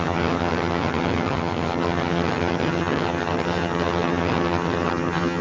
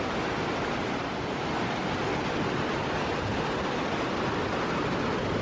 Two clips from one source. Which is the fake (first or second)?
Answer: first